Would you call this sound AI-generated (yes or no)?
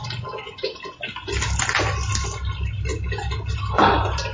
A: no